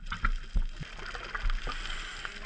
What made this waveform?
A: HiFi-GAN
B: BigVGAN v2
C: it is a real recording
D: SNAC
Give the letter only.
C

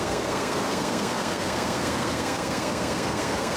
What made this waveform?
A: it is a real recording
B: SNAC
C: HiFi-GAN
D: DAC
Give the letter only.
B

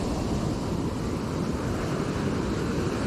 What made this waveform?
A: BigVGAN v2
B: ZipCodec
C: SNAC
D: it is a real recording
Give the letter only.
D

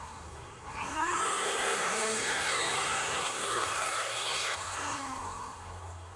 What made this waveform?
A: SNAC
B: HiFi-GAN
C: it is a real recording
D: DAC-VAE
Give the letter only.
A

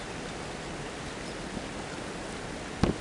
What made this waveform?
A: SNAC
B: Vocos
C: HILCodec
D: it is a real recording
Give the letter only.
D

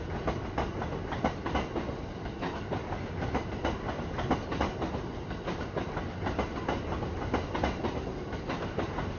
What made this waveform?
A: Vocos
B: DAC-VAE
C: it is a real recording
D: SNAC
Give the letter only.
C